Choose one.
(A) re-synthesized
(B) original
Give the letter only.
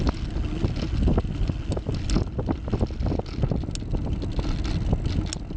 B